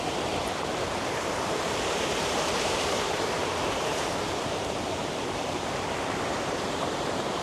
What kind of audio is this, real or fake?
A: fake